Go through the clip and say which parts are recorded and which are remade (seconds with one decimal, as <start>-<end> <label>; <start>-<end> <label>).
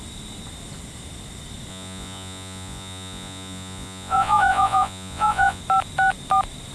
0.0-1.7 recorded; 1.7-5.6 remade; 5.6-6.7 recorded